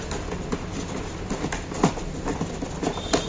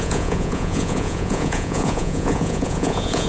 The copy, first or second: second